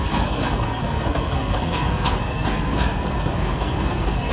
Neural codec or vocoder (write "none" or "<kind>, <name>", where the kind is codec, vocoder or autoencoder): codec, SNAC